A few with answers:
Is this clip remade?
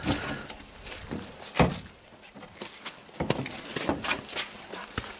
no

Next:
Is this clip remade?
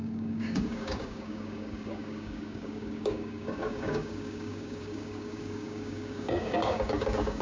yes